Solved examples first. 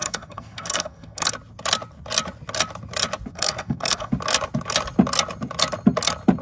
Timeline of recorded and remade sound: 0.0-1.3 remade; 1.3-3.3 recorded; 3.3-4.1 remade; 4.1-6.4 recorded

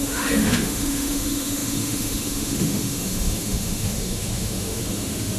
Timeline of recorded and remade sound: 0.0-5.4 remade

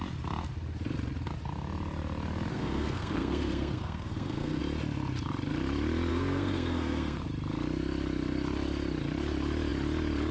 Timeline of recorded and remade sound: 0.0-2.5 recorded; 2.5-4.6 remade; 4.6-6.1 recorded; 6.1-7.2 remade; 7.2-10.3 recorded